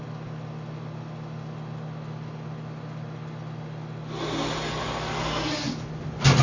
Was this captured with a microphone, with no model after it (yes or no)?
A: yes